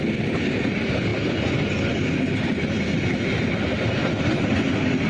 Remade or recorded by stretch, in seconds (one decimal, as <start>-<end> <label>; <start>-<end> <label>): 0.0-5.1 recorded